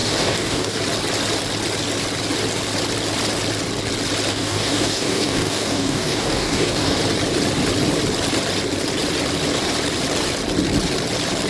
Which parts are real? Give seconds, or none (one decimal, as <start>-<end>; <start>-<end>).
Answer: 0.8-4.3; 7.0-11.5